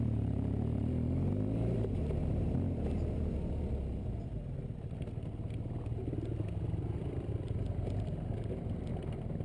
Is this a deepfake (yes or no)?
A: no